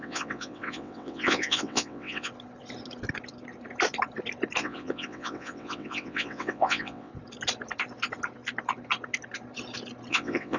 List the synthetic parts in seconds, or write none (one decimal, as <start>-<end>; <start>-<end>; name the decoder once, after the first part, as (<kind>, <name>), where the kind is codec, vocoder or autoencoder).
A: 0.0-2.3 (vocoder, WaveNeXt); 4.6-7.1; 10.1-10.6